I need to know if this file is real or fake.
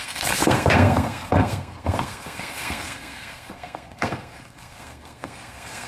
fake